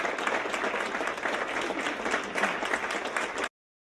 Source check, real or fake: real